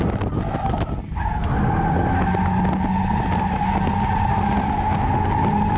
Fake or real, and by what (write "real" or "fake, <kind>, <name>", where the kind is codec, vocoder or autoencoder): real